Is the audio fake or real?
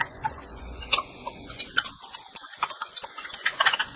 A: fake